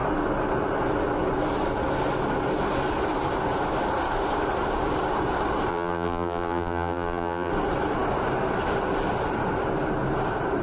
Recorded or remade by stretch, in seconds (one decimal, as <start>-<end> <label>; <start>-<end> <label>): 0.0-5.7 recorded; 5.7-7.5 remade; 7.5-10.6 recorded

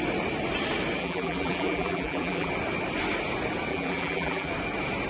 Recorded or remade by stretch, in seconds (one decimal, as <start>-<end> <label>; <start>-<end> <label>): 0.0-1.0 recorded; 1.0-2.5 remade; 2.5-3.7 recorded; 3.7-4.5 remade; 4.5-5.1 recorded

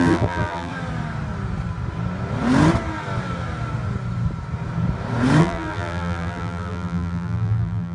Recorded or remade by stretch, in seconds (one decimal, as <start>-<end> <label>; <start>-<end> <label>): 0.0-0.7 remade; 0.7-5.4 recorded; 5.4-7.9 remade

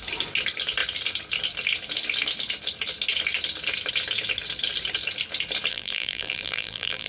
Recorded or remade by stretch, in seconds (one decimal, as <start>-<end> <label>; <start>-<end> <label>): 0.0-5.7 recorded; 5.7-7.1 remade